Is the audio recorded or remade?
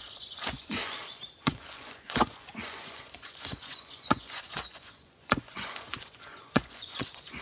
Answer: remade